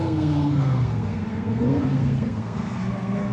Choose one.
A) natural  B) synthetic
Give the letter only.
B